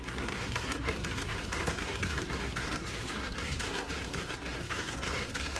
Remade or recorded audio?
remade